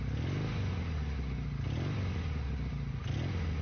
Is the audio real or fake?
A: real